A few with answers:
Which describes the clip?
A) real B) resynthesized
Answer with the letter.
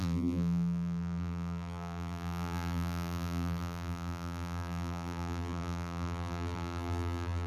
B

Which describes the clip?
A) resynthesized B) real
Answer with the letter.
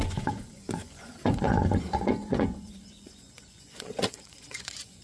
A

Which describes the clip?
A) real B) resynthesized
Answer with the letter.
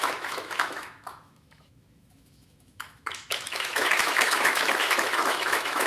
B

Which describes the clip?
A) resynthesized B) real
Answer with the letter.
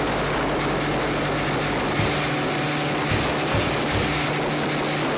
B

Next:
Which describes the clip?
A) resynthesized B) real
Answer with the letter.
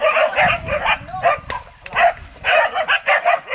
B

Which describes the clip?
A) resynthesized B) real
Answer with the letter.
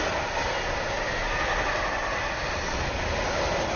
B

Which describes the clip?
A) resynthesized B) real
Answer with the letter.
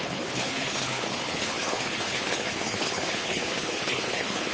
A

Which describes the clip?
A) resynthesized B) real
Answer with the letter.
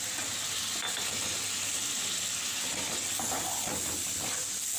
B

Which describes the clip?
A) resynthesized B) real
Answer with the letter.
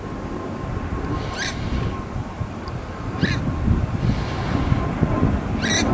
B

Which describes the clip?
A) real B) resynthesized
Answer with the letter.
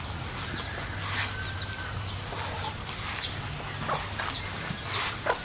A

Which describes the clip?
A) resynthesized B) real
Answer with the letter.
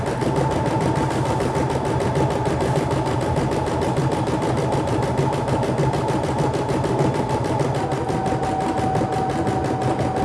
B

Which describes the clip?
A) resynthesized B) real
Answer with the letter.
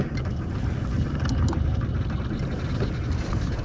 B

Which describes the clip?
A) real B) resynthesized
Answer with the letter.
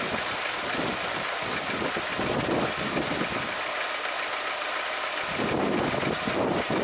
A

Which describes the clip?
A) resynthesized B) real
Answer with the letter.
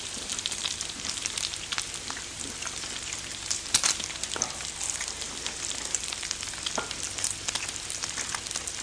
B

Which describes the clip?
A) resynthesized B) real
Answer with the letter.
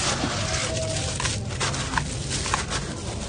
B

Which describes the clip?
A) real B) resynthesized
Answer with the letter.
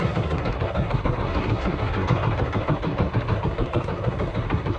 B